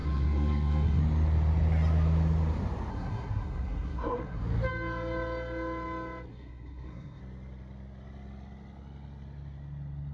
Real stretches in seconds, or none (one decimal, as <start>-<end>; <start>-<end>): 1.0-2.9; 4.4-6.3; 7.2-10.1